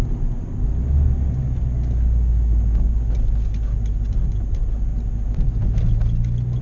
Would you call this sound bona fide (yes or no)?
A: yes